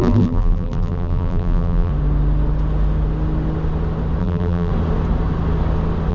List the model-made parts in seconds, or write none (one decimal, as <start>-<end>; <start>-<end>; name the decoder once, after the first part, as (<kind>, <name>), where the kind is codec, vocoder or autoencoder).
0.0-1.9 (vocoder, BigVGAN v2); 4.2-4.7